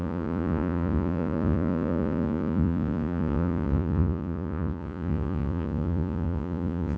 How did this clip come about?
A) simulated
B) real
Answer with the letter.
A